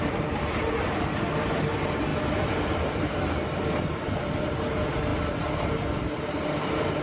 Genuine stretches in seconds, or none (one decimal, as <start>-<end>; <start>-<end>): 0.0-7.0